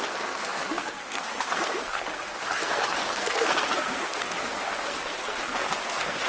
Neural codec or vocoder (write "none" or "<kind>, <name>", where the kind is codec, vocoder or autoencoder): codec, SNAC